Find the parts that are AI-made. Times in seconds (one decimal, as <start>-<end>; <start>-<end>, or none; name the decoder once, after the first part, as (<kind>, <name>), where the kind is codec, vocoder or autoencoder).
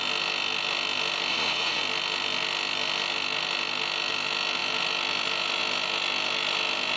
1.3-1.8 (vocoder, Vocos)